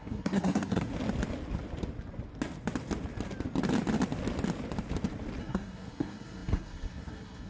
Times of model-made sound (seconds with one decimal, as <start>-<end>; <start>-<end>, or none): 0.0-0.9; 5.4-7.5